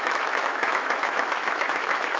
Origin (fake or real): fake